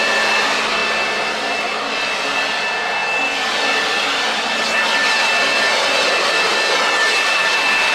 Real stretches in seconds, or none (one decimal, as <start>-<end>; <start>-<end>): 0.0-7.9